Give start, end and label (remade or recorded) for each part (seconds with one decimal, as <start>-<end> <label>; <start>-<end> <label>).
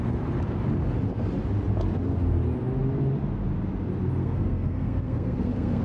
0.0-4.2 recorded; 4.2-5.8 remade